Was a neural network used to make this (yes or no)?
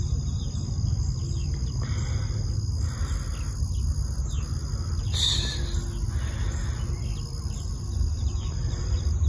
no